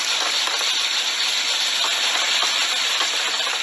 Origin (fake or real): real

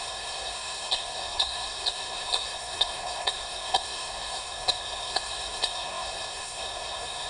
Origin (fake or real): fake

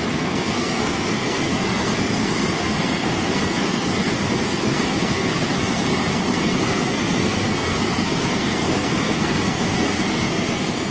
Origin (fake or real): fake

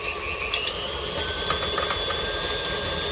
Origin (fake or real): real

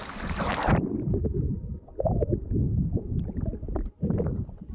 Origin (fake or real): real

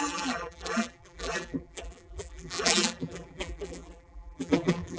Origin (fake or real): fake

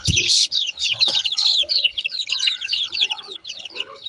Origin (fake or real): fake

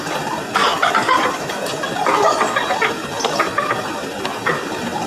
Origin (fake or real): fake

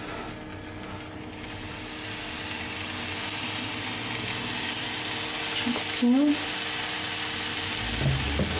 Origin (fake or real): real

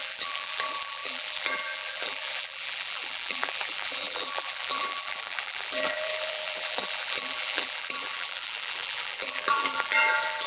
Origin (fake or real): fake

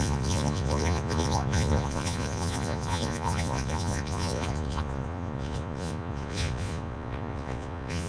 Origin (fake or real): fake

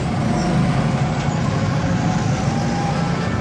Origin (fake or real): real